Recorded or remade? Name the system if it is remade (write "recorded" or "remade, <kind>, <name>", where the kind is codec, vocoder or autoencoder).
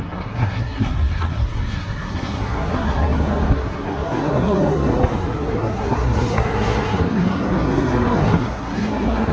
remade, codec, SNAC